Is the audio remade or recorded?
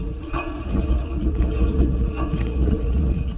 remade